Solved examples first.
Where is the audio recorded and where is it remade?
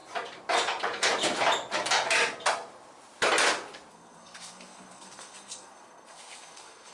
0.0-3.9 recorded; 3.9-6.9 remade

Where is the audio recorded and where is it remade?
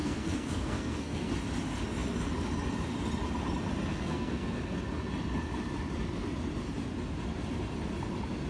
0.0-1.3 remade; 1.3-3.9 recorded; 3.9-4.6 remade; 4.6-8.5 recorded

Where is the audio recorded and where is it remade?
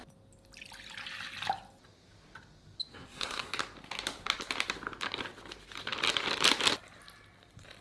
0.0-2.9 recorded; 2.9-3.5 remade; 3.5-7.8 recorded